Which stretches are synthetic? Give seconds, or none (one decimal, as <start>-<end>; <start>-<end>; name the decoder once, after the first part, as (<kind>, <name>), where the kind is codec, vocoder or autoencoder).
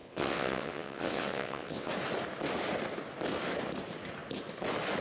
0.0-1.9 (vocoder, WaveNeXt)